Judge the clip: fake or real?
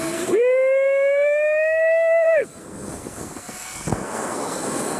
fake